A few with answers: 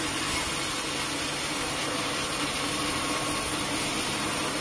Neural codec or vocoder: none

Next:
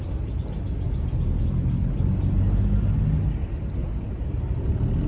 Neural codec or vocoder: none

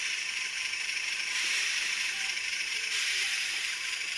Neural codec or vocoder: vocoder, BigVGAN v2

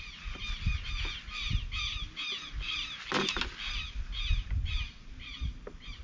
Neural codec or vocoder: none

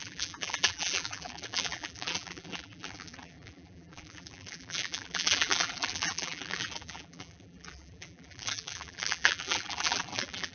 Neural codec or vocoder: vocoder, BigVGAN v2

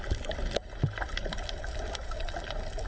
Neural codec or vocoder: none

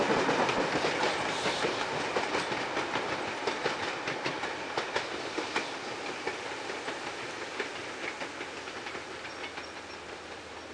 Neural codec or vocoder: none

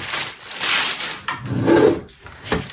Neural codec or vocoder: none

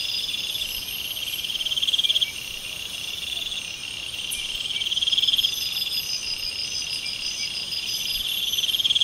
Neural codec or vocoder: vocoder, BigVGAN v2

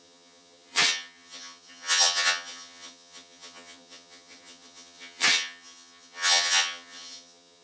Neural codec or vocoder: vocoder, HiFi-GAN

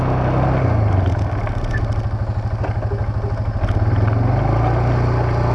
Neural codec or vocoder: none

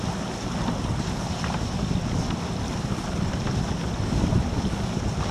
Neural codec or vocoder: none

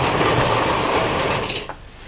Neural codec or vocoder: none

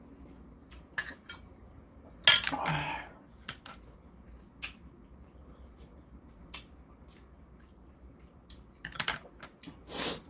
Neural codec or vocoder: none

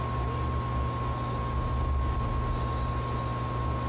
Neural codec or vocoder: none